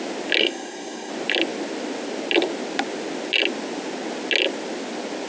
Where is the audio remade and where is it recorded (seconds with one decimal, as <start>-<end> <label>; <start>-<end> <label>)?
0.0-0.4 recorded; 0.4-1.1 remade; 1.1-5.3 recorded